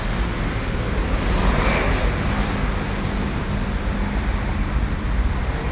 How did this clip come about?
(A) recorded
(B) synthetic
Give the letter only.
A